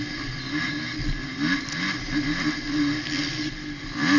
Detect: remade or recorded recorded